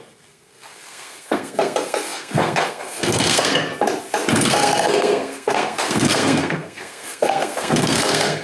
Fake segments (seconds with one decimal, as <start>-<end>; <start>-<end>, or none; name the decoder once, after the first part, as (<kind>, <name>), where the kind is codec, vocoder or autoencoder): 0.0-3.7 (codec, SNAC); 4.3-8.4